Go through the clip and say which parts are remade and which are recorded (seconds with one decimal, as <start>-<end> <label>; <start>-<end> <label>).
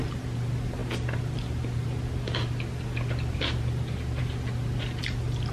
0.0-5.5 recorded